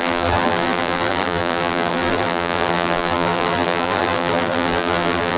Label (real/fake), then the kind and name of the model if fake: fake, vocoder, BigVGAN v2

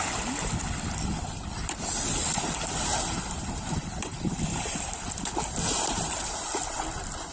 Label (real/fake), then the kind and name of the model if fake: real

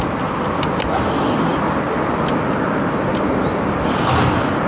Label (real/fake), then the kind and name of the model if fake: real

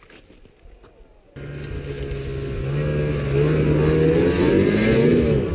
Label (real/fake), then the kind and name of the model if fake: real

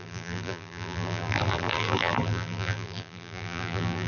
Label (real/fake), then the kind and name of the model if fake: fake, vocoder, BigVGAN v2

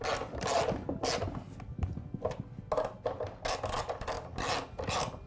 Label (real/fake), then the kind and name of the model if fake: real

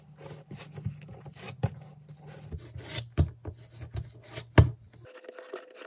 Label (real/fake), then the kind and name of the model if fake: real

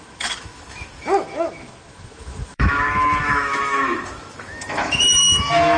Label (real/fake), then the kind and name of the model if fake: fake, autoencoder, DAC-VAE